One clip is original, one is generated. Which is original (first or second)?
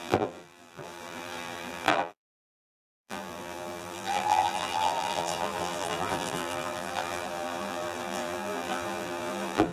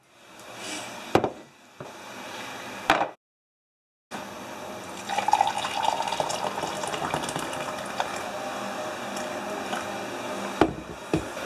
second